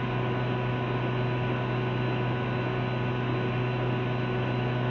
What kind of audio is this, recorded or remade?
recorded